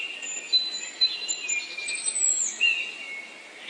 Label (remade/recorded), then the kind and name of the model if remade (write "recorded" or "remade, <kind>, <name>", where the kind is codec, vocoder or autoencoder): recorded